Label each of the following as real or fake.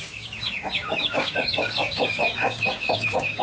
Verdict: fake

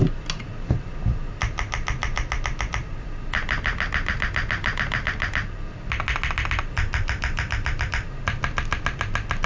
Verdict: real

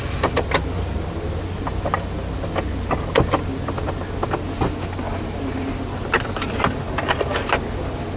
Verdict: real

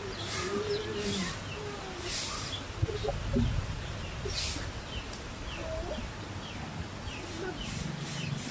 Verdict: real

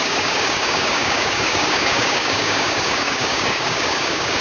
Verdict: fake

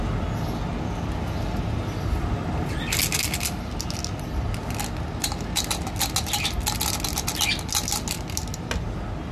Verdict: real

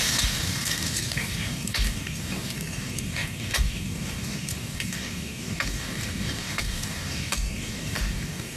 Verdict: fake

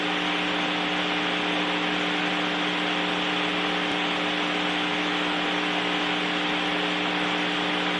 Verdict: real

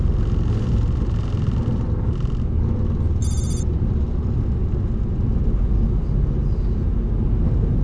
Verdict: real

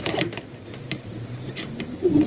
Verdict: real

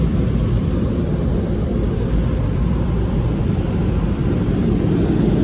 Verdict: real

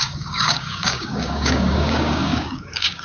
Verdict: fake